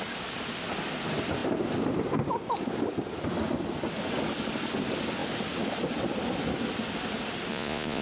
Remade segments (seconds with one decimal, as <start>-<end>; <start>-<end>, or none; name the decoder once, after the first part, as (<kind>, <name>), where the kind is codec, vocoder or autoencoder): 7.5-8.0 (vocoder, Vocos)